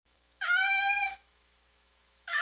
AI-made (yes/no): yes